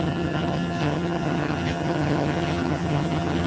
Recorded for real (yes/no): no